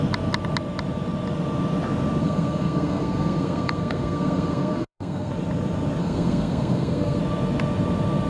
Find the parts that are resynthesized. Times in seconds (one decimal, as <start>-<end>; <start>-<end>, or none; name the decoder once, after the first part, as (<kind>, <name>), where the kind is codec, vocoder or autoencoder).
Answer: 2.2-5.3 (codec, SNAC); 6.0-7.2